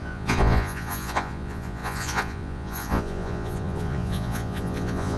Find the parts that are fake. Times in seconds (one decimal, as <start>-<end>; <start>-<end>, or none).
0.0-5.2